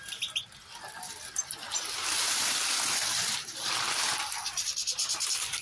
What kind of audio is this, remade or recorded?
remade